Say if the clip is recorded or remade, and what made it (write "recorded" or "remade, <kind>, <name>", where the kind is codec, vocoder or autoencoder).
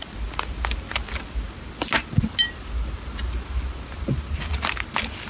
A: recorded